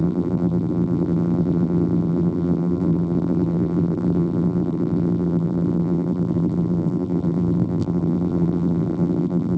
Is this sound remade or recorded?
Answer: remade